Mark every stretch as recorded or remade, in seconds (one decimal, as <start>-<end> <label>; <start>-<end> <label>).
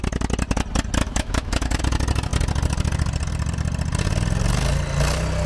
0.0-1.0 recorded; 1.0-1.8 remade; 1.8-5.5 recorded